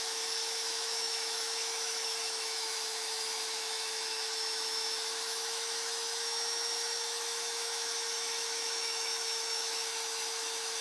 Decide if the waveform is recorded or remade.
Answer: remade